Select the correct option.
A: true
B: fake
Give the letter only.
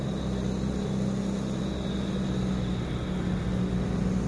A